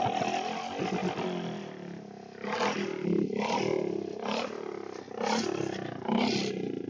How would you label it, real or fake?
real